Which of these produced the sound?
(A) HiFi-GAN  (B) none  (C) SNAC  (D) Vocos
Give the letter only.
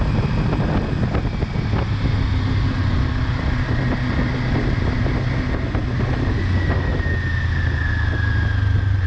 B